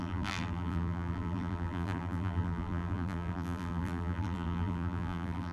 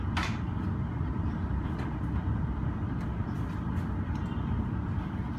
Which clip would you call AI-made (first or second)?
first